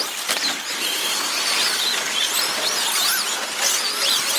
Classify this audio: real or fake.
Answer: real